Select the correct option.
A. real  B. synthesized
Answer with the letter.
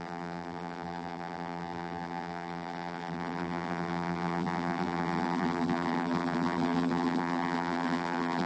B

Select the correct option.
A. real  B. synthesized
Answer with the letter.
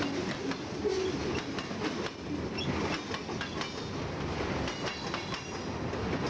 A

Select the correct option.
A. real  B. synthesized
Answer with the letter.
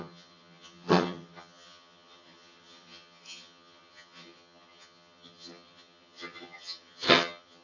B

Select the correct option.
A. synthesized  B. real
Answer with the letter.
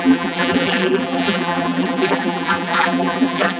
A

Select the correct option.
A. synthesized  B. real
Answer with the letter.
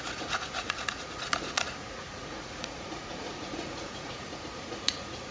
A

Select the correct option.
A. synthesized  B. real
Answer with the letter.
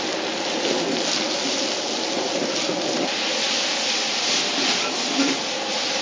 B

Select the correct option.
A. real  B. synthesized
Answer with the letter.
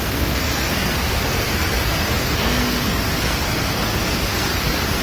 B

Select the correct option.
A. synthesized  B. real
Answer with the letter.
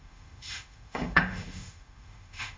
A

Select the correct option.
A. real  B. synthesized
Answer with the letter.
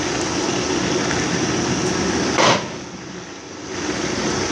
A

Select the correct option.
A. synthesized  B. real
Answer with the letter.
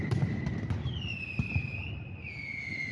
B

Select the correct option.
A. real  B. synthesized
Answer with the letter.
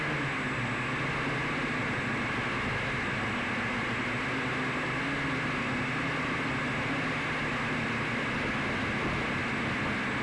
A